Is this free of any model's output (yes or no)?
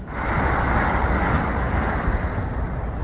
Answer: yes